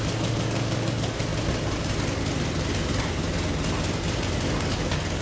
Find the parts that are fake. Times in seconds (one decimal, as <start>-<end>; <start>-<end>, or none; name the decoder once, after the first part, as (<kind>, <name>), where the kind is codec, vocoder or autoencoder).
0.0-1.3 (codec, DAC); 4.4-5.2